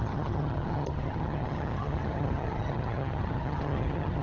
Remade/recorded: remade